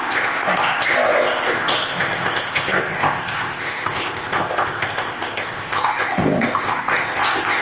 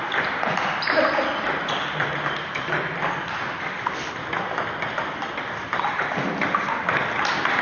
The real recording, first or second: second